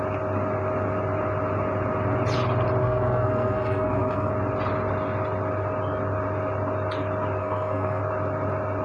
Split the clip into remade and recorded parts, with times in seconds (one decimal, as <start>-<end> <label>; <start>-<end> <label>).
0.0-2.8 recorded; 2.8-4.3 remade; 4.3-7.4 recorded; 7.4-8.0 remade; 8.0-8.8 recorded

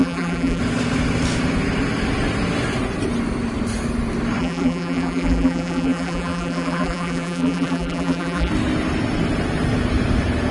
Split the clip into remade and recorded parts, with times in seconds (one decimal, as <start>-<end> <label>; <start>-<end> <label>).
0.0-0.6 remade; 0.6-4.4 recorded; 4.4-8.5 remade; 8.5-10.5 recorded

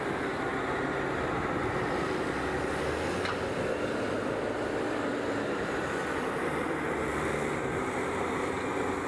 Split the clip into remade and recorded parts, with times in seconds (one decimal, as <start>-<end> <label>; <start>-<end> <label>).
0.0-0.5 remade; 0.5-4.9 recorded; 4.9-7.1 remade; 7.1-9.1 recorded

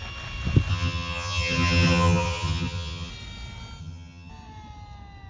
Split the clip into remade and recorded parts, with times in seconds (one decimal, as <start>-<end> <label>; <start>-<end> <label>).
0.0-0.7 recorded; 0.7-3.1 remade; 3.1-3.8 recorded; 3.8-4.3 remade; 4.3-5.3 recorded

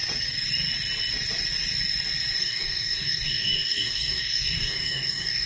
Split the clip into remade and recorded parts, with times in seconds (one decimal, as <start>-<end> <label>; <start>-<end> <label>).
0.0-2.4 recorded; 2.4-5.5 remade

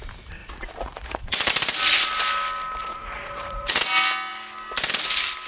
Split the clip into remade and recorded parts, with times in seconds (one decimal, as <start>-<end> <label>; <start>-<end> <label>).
0.0-0.4 recorded; 0.4-1.5 remade; 1.5-2.8 recorded; 2.8-3.8 remade; 3.8-5.5 recorded

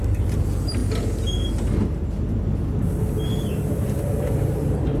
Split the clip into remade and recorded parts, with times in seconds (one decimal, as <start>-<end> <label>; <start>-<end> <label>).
0.0-0.8 remade; 0.8-3.8 recorded; 3.8-5.0 remade

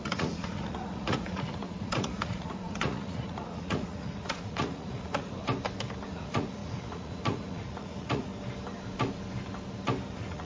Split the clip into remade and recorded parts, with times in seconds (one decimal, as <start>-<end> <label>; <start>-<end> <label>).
0.0-5.4 remade; 5.4-6.1 recorded; 6.1-8.3 remade; 8.3-10.1 recorded; 10.1-10.5 remade